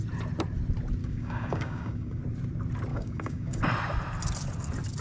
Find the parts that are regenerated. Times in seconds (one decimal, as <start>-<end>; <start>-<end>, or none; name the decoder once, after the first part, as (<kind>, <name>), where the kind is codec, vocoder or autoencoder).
1.0-2.2 (codec, DAC); 2.9-3.6